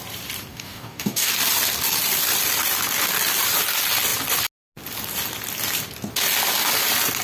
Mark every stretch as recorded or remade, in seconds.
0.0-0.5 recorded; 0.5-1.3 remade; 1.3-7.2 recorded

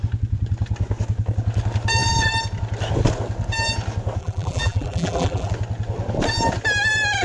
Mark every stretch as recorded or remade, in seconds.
0.0-4.2 recorded; 4.2-5.5 remade; 5.5-7.2 recorded

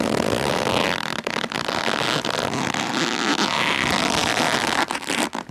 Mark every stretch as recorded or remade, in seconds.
0.0-5.5 recorded

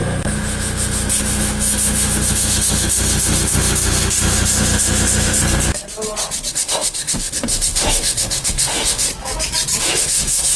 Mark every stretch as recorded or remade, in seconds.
0.0-5.4 remade; 5.4-6.5 recorded; 6.5-9.1 remade; 9.1-9.8 recorded; 9.8-10.6 remade

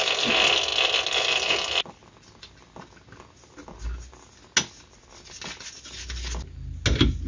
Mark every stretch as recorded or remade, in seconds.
0.0-7.3 recorded

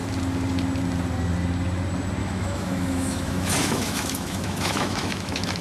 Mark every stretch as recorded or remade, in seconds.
0.0-2.2 recorded; 2.2-5.6 remade

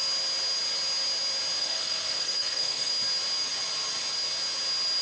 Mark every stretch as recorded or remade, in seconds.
0.0-1.6 recorded; 1.6-2.9 remade; 2.9-5.0 recorded